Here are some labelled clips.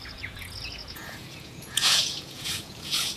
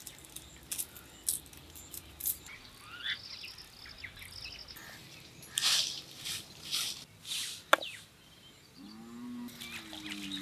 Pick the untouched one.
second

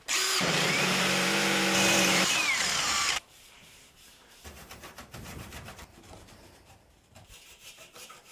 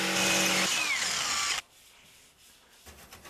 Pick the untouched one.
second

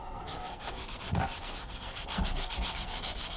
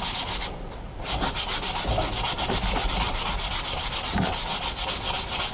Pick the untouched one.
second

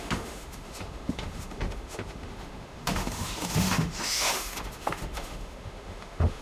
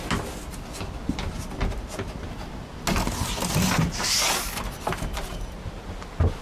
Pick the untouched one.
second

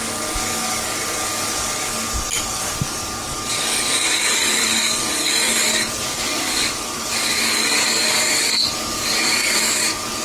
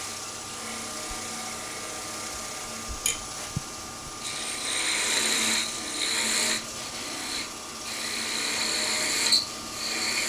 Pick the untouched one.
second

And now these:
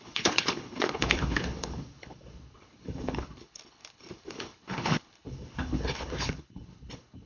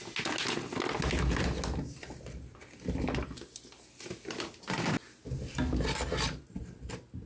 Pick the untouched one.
second